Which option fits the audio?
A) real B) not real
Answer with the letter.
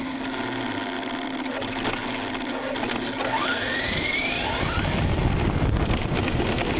A